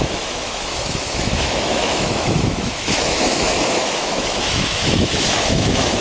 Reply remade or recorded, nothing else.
remade